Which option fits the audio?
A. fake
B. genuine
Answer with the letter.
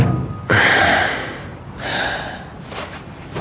B